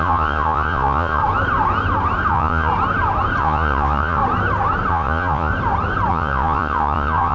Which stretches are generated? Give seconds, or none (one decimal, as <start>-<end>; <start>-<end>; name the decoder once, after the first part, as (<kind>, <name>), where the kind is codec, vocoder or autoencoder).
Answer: 0.0-1.2 (vocoder, Vocos); 2.3-2.7; 3.4-4.2; 4.9-5.5; 6.1-7.3